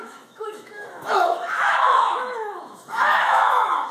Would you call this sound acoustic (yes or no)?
no